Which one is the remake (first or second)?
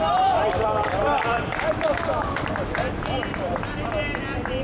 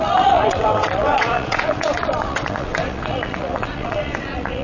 second